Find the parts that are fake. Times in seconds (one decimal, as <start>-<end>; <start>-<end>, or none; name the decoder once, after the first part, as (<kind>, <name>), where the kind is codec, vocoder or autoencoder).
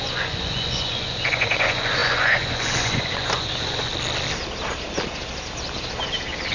0.0-3.9 (vocoder, Vocos)